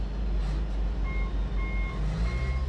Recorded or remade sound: recorded